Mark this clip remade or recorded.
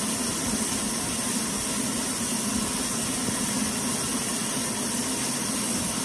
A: recorded